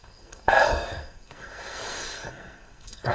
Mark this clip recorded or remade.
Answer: remade